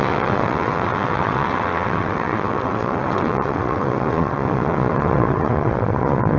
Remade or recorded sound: remade